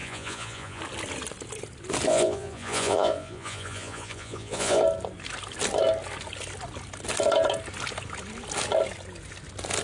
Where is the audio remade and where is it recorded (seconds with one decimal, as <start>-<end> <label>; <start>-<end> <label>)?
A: 0.0-0.8 remade; 0.8-2.1 recorded; 2.1-4.8 remade; 4.8-9.8 recorded